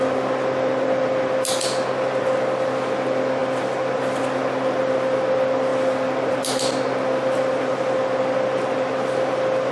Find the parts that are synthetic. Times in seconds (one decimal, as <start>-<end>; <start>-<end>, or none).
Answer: none